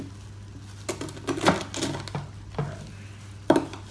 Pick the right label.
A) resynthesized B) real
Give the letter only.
B